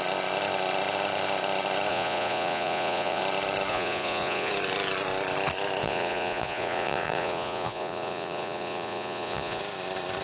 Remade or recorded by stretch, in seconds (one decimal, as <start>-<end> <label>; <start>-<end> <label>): 0.0-1.9 recorded; 1.9-3.2 remade; 3.2-3.7 recorded; 3.7-4.5 remade; 4.5-5.8 recorded; 5.8-9.6 remade; 9.6-10.2 recorded